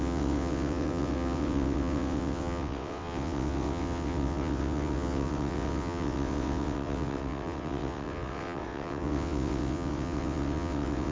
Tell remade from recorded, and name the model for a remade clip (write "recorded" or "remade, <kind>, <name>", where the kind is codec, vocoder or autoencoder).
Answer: remade, vocoder, WaveNeXt